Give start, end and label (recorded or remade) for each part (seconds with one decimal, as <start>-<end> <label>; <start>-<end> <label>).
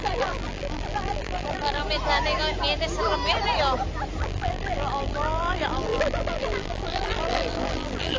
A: 0.0-1.8 remade; 1.8-4.2 recorded; 4.2-8.2 remade